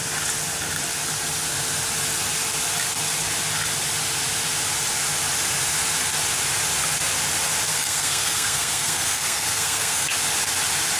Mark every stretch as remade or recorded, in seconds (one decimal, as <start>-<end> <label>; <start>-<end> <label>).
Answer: 0.0-7.7 recorded; 7.7-10.1 remade; 10.1-11.0 recorded